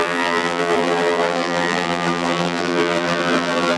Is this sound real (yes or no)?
no